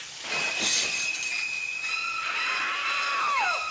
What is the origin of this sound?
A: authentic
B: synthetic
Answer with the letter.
A